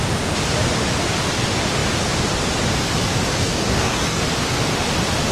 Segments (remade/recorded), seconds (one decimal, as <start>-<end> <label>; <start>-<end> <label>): 0.0-3.4 recorded; 3.4-4.2 remade; 4.2-5.3 recorded